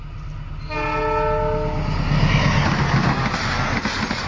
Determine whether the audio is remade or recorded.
recorded